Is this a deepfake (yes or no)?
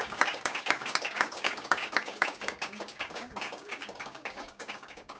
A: yes